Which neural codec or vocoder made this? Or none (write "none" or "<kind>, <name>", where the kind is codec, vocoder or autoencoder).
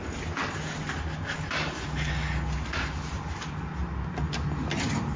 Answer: none